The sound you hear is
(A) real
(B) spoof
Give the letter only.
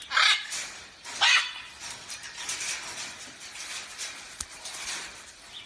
B